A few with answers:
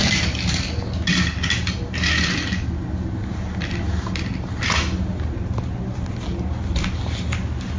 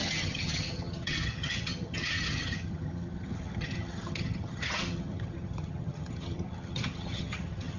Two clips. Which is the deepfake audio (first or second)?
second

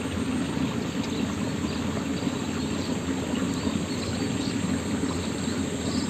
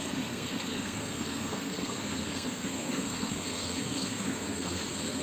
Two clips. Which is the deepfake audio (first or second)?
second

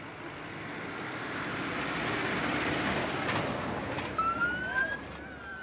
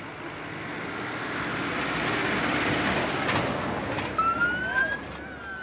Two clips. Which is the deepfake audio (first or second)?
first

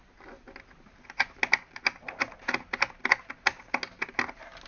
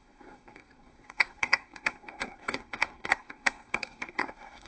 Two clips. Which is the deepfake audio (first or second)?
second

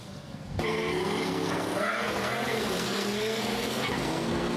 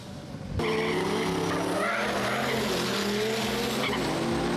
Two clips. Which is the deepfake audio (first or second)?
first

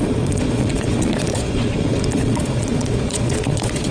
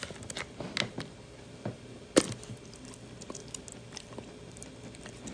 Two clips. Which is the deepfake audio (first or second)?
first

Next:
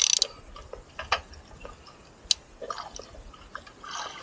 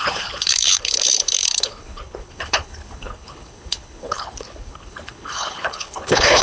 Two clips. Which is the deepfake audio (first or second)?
second